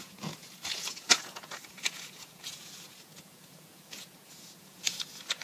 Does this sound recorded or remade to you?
remade